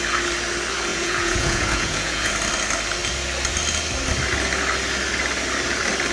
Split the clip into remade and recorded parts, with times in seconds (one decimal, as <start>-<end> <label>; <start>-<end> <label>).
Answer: 0.0-0.9 recorded; 0.9-2.3 remade; 2.3-6.1 recorded

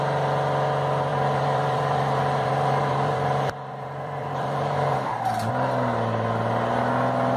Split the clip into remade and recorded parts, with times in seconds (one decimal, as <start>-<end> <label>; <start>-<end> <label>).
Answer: 0.0-1.1 recorded; 1.1-5.5 remade; 5.5-7.4 recorded

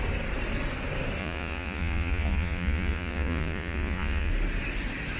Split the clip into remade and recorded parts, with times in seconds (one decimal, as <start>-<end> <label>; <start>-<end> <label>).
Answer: 0.0-1.2 recorded; 1.2-4.3 remade; 4.3-5.2 recorded

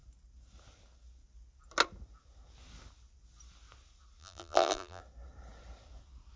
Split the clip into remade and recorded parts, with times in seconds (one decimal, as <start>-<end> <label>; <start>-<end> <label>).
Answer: 0.0-4.2 recorded; 4.2-5.0 remade; 5.0-6.4 recorded

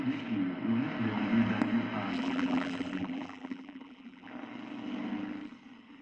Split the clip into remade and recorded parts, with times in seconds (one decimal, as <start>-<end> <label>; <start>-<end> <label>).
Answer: 0.0-2.1 recorded; 2.1-4.3 remade; 4.3-6.0 recorded